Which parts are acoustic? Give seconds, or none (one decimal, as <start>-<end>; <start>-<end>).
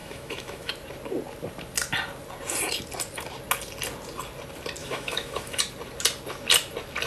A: 0.7-4.8; 5.6-7.1